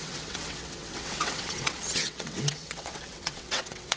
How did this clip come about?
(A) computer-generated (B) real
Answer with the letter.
A